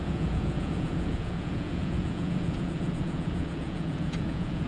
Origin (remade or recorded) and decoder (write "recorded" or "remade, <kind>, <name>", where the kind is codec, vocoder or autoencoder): remade, vocoder, Vocos